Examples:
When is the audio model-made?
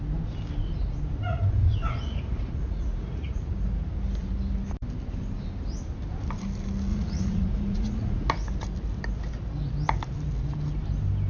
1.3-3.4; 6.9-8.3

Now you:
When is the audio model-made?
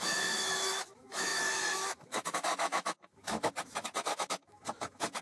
0.0-5.2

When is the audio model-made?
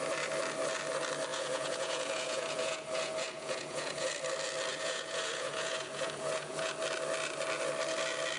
1.3-4.1; 4.7-6.7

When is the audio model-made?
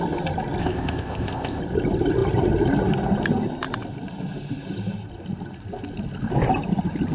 0.6-1.6